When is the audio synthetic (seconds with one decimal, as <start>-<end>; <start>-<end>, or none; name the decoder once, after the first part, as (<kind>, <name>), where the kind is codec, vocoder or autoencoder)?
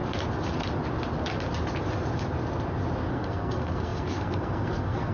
3.1-5.1 (codec, SNAC)